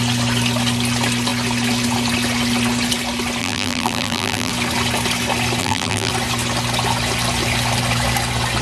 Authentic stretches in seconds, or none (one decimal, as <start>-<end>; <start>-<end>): 0.0-3.4; 4.5-5.6; 6.1-8.6